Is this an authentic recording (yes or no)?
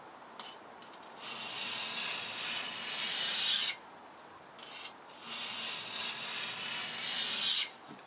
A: yes